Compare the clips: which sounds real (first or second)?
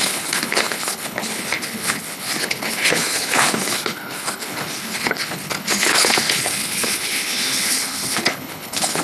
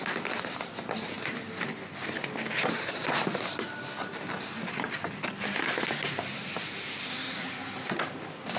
second